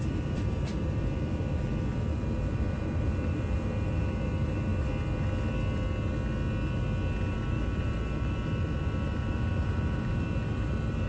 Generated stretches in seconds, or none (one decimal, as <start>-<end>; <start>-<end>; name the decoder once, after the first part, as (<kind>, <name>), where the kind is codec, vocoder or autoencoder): 0.0-4.7 (vocoder, BigVGAN v2); 7.3-11.1